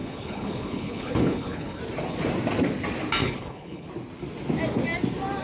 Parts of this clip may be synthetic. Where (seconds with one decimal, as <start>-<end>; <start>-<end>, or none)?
0.0-1.8; 3.2-3.9